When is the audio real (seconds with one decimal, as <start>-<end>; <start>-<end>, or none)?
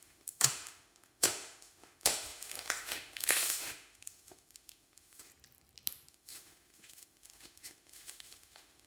5.3-6.1